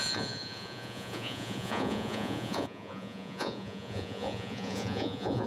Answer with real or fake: fake